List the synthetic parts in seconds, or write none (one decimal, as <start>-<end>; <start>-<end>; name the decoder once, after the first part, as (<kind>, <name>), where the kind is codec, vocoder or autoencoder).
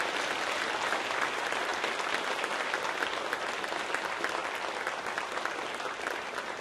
none